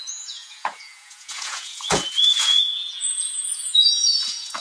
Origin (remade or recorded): remade